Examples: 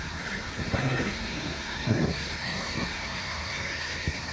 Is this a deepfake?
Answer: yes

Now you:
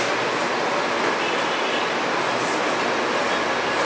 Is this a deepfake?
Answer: no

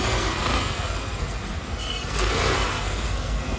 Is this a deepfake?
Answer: yes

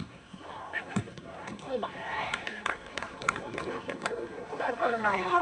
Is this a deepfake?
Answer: yes